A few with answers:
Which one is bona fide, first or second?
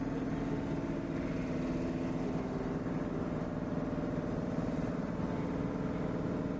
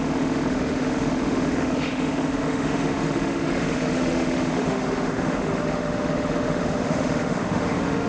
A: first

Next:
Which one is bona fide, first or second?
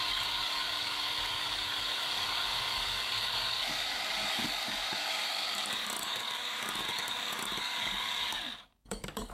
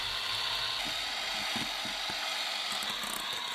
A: second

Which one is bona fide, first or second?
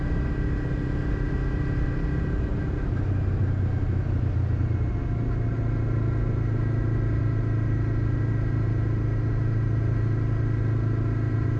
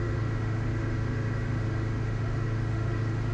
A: first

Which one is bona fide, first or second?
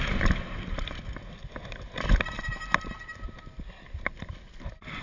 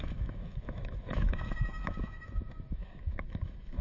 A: first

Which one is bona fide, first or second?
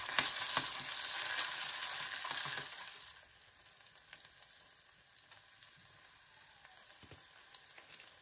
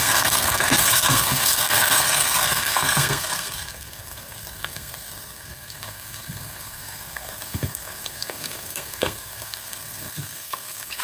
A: first